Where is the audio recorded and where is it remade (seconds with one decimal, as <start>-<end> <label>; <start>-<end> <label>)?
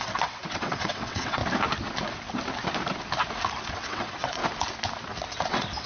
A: 0.0-1.4 remade; 1.4-3.7 recorded; 3.7-4.4 remade; 4.4-5.5 recorded; 5.5-5.9 remade